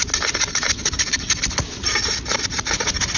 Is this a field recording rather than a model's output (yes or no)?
yes